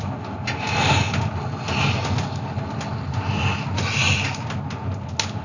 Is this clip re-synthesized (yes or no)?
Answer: no